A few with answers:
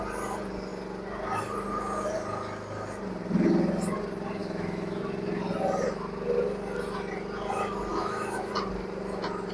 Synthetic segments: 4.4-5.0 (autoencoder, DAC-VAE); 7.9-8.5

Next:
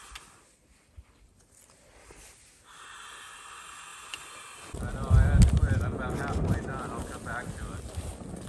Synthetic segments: none

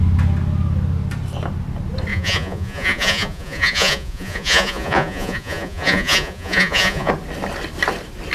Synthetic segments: 2.1-7.1 (vocoder, Vocos)

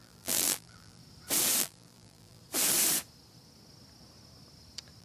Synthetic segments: 0.0-1.0 (vocoder, BigVGAN v2); 1.6-2.4